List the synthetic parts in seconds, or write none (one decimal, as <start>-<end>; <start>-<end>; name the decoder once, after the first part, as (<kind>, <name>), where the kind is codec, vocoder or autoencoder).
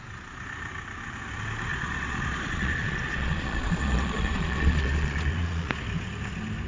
1.7-5.7 (vocoder, Vocos)